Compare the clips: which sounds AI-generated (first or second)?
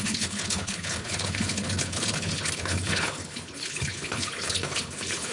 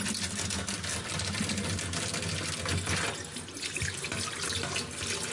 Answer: first